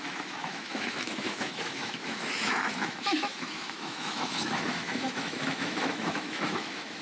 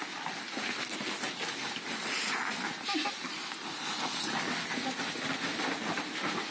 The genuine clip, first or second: second